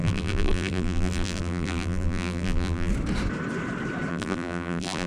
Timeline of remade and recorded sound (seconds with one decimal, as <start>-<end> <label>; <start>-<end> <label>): 0.0-2.9 remade; 2.9-4.1 recorded; 4.1-5.1 remade

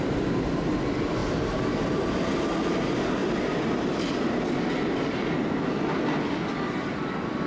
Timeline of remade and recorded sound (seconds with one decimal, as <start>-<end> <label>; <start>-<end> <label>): 0.0-1.2 recorded; 1.2-2.4 remade; 2.4-3.2 recorded; 3.2-4.0 remade; 4.0-7.5 recorded

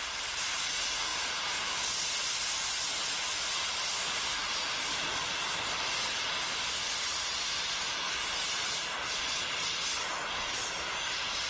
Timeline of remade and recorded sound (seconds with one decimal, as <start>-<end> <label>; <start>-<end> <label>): 0.0-11.5 recorded

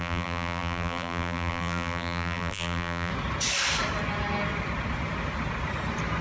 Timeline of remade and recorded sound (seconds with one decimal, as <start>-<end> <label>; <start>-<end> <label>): 0.0-3.1 remade; 3.1-6.2 recorded